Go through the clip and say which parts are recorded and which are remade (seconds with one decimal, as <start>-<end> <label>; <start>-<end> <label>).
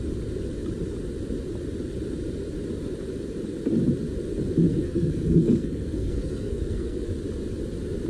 0.0-4.7 recorded; 4.7-7.1 remade; 7.1-8.1 recorded